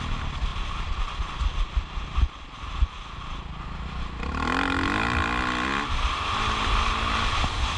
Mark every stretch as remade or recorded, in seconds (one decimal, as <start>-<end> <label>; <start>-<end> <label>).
0.0-7.8 recorded